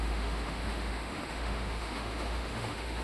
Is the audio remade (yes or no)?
yes